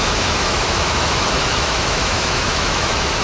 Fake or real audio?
fake